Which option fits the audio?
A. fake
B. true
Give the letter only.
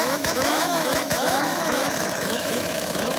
A